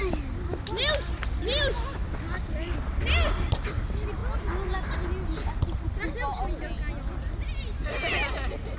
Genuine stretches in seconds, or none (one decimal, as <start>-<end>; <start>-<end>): 0.0-8.8